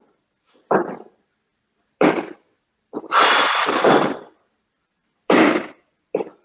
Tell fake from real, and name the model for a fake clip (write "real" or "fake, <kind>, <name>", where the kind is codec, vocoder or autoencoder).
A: fake, vocoder, BigVGAN v2